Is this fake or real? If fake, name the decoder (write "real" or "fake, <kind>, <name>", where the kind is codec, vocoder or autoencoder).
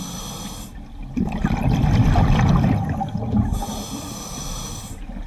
real